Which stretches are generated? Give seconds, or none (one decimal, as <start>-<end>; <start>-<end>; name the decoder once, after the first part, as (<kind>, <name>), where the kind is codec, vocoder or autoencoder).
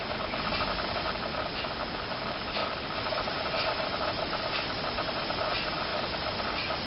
2.6-4.5 (vocoder, BigVGAN v2); 5.9-6.9